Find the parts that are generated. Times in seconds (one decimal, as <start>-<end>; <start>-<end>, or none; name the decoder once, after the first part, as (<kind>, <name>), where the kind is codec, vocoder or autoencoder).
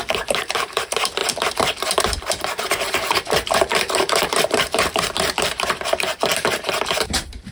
0.0-7.5 (vocoder, BigVGAN v2)